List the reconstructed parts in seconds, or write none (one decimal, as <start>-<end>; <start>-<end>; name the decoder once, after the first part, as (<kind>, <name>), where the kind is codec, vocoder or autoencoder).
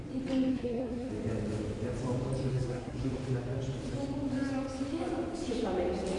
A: 0.5-1.1 (codec, SNAC); 2.5-3.1